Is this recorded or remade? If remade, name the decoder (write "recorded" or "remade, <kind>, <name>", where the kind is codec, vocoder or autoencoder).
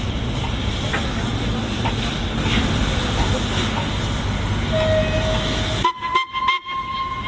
recorded